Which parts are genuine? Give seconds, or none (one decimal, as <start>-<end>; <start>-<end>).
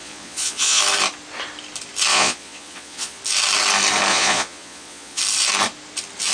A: 0.8-2.1; 3.2-4.1; 5.2-6.3